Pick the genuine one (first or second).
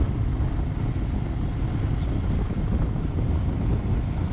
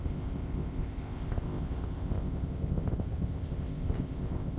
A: first